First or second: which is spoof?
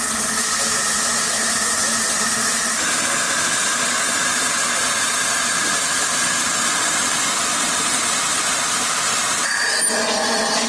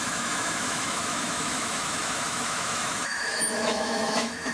second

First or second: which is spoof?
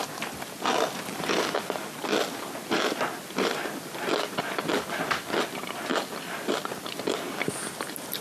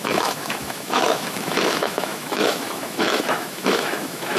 second